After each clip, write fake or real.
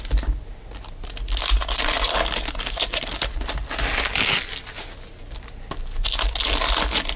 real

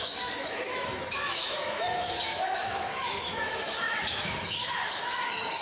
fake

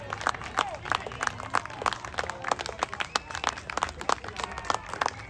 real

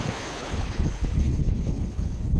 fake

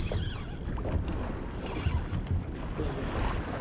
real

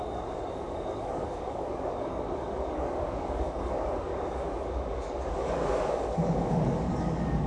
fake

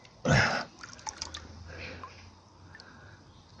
real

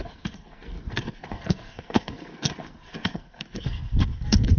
fake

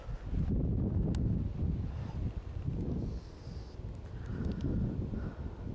real